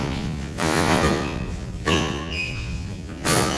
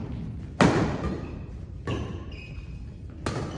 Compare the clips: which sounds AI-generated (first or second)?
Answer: first